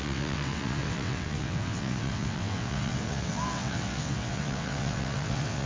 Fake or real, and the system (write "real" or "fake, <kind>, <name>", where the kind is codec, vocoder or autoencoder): fake, vocoder, WaveNeXt